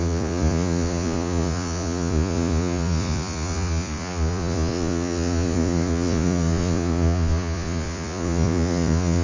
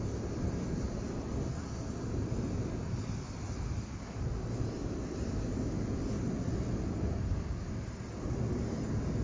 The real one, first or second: second